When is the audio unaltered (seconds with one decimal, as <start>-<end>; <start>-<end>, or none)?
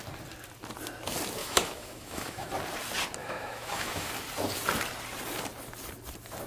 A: 0.0-1.4; 2.5-3.2; 4.1-6.5